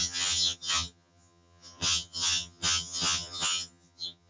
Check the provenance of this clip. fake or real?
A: fake